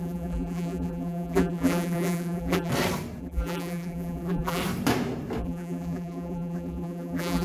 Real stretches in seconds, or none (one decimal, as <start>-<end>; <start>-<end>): 2.7-3.2; 4.6-5.4